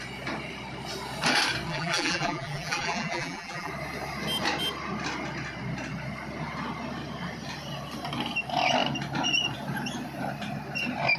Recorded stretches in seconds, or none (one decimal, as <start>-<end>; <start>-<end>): 0.0-1.7; 3.7-11.2